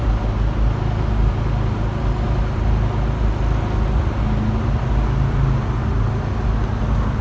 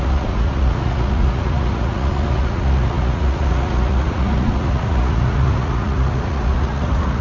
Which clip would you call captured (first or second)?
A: first